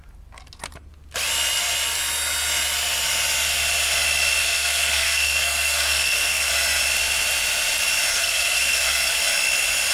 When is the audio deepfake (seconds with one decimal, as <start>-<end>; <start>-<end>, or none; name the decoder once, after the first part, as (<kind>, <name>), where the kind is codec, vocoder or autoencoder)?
4.4-6.5 (codec, SNAC); 8.1-9.1